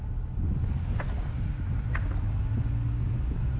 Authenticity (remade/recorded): recorded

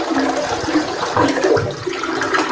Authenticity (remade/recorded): recorded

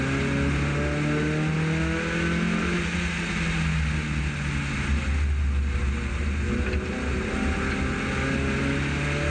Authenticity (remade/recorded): recorded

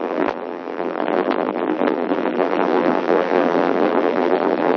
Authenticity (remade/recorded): remade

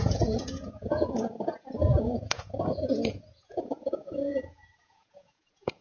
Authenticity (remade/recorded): remade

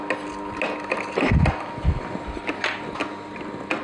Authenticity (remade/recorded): recorded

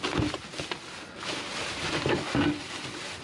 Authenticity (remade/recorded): recorded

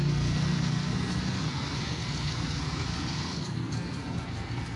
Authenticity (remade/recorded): remade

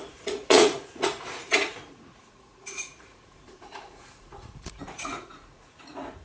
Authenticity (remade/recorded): remade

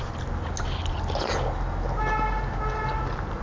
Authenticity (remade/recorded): recorded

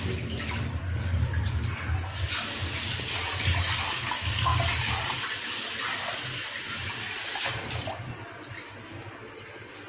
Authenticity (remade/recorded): recorded